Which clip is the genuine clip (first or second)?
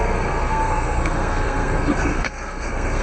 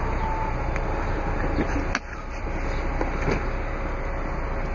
second